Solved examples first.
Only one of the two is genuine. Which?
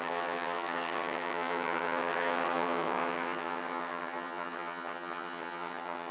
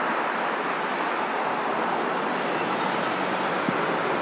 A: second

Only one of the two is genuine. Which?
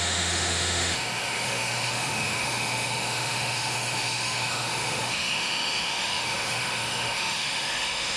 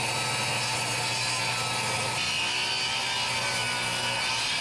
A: second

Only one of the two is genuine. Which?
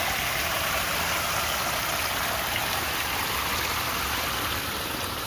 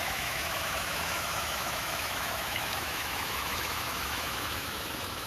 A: first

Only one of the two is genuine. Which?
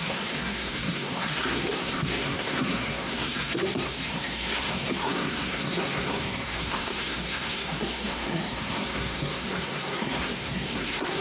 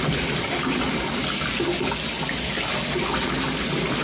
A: second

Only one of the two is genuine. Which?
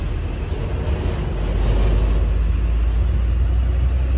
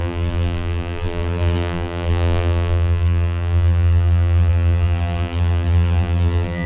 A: first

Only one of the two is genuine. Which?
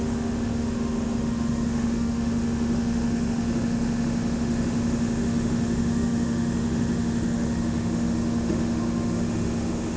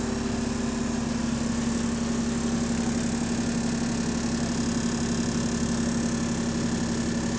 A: second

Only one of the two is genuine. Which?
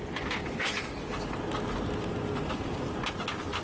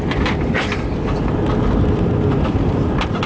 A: first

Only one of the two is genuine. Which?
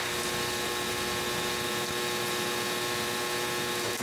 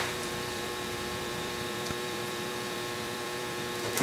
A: first